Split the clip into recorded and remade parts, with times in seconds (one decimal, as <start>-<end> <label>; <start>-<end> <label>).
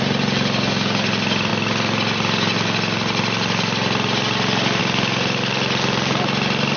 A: 0.0-6.8 recorded